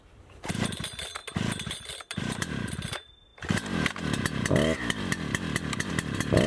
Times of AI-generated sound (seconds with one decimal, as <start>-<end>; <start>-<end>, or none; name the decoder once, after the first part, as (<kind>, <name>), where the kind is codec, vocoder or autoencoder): 0.0-1.2 (vocoder, BigVGAN v2); 2.0-3.3; 5.9-6.5